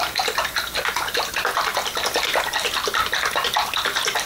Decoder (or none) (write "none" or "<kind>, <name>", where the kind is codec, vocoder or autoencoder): none